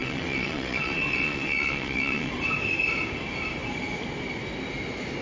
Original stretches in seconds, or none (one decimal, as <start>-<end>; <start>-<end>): 2.3-5.2